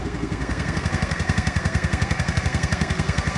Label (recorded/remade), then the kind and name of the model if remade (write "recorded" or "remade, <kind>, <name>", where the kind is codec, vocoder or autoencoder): remade, codec, SNAC